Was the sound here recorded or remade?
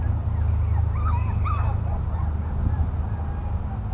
recorded